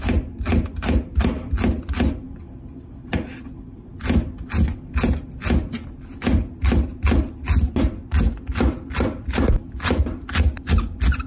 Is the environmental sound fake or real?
real